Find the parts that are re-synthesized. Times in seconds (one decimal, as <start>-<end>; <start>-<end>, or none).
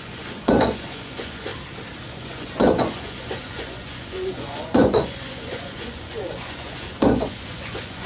0.0-1.5; 2.1-8.1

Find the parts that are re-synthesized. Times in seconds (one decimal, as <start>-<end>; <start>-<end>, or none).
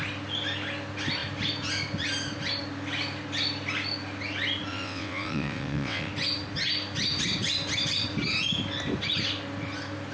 4.7-6.1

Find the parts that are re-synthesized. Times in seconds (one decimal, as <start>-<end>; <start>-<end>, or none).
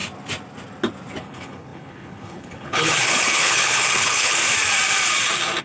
1.2-4.4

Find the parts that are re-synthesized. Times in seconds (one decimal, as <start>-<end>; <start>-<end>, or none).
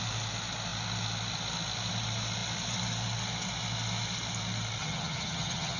4.8-5.8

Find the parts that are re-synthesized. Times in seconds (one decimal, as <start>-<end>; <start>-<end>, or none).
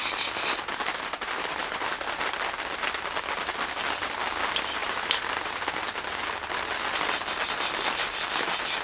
0.0-2.1; 4.8-5.6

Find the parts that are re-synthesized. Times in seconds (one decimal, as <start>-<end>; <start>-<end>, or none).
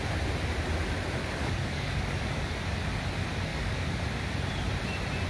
1.2-2.5; 3.5-4.0